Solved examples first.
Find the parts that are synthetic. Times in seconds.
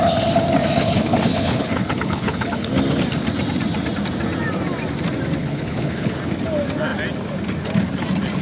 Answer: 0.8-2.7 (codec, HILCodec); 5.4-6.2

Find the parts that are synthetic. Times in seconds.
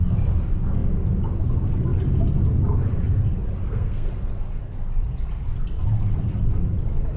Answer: 3.6-4.1 (codec, SNAC)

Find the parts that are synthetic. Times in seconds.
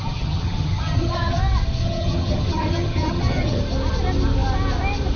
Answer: 0.0-1.4 (vocoder, HiFi-GAN); 1.8-3.6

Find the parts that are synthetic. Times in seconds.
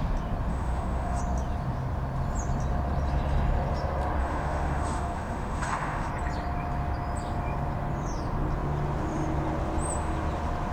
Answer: 0.5-1.2 (autoencoder, DAC-VAE); 4.2-6.1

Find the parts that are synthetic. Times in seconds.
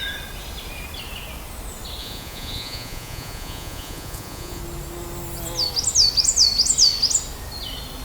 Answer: 2.0-4.6 (vocoder, Vocos)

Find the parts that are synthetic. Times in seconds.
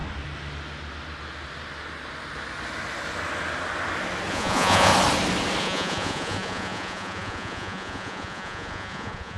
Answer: 4.3-4.9 (vocoder, Vocos); 5.6-9.4